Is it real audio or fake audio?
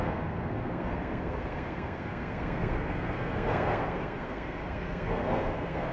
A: fake